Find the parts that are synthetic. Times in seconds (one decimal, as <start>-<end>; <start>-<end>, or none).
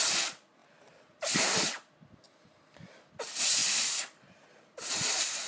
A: 0.6-1.6; 3.6-4.9